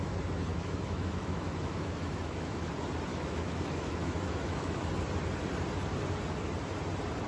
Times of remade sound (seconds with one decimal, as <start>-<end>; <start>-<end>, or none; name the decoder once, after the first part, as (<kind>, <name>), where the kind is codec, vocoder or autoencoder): 0.5-2.7 (autoencoder, DAC-VAE); 3.1-4.9